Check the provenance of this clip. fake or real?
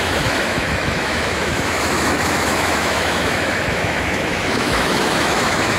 fake